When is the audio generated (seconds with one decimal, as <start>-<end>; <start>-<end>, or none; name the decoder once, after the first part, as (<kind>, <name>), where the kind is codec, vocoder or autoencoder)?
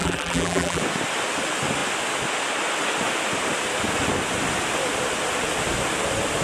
0.0-0.8 (vocoder, BigVGAN v2)